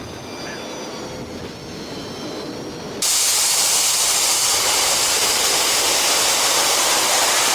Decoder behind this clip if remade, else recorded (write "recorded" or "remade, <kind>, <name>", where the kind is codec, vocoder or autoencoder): recorded